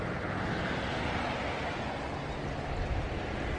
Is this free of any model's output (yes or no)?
yes